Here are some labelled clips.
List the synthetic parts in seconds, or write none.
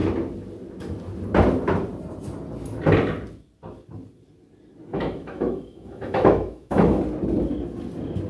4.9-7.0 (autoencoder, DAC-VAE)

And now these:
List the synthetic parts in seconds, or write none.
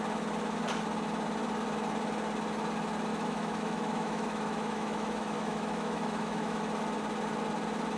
3.1-6.6 (autoencoder, DAC-VAE)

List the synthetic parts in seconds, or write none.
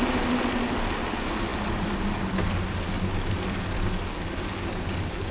none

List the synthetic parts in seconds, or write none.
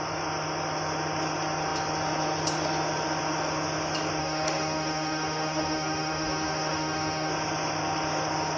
4.2-7.3 (autoencoder, DAC-VAE)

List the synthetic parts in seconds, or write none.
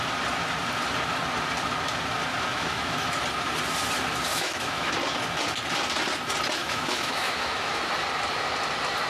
2.5-3.2 (autoencoder, DAC-VAE); 4.3-4.9; 6.6-7.8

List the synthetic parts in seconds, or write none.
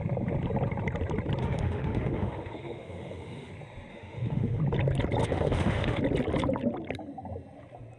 1.4-3.5 (autoencoder, DAC-VAE); 3.9-4.6; 5.2-6.0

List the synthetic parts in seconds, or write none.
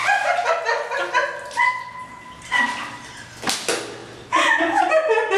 none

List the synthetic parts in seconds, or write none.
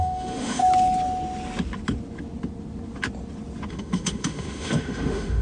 0.0-0.6 (autoencoder, DAC-VAE); 3.7-5.4